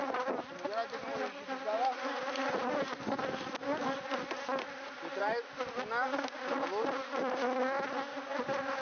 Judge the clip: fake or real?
real